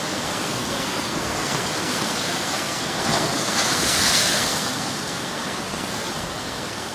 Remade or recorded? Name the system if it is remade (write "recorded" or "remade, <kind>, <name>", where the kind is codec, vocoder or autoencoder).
remade, codec, SNAC